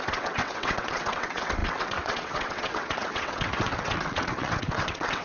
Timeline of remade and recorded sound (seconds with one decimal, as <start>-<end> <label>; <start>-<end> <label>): 0.0-5.2 remade